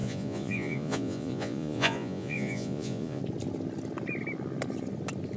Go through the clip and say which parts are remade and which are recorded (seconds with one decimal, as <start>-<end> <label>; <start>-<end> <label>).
0.0-3.2 remade; 3.2-5.4 recorded